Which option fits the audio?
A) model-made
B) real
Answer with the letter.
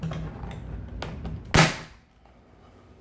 B